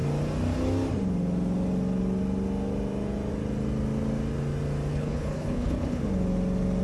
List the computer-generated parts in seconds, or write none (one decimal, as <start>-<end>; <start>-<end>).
4.9-6.0